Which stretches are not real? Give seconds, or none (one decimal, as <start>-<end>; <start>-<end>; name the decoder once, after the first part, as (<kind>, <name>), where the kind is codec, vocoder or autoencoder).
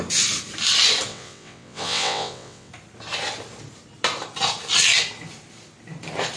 1.1-2.7 (vocoder, WaveNeXt)